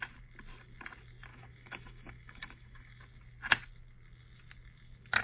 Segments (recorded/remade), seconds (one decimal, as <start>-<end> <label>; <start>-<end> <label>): 0.0-1.3 recorded; 1.3-3.0 remade; 3.0-5.2 recorded